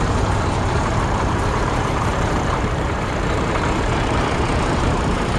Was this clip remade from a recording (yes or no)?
yes